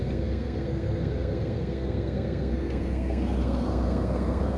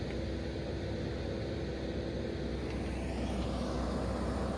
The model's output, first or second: first